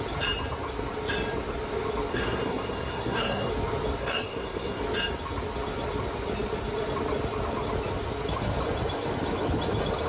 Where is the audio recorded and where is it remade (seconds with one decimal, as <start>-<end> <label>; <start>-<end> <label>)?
0.0-2.1 recorded; 2.1-3.5 remade; 3.5-4.0 recorded; 4.0-4.8 remade; 4.8-10.1 recorded